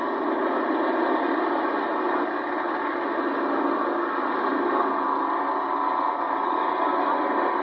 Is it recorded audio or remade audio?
recorded